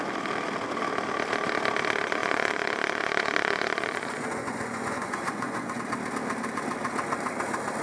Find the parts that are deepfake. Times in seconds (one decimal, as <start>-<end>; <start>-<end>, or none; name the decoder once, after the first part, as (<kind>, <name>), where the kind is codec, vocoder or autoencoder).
2.2-5.8 (vocoder, Vocos)